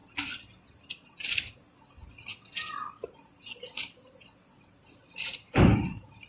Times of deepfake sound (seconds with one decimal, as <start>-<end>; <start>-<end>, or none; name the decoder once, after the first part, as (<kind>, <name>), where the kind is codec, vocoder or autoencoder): 0.0-0.9 (vocoder, BigVGAN v2); 3.0-6.3